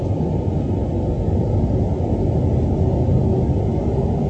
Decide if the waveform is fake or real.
real